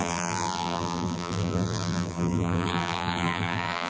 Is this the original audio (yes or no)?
no